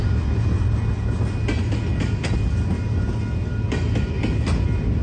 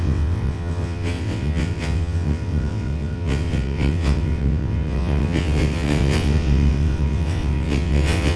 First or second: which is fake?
second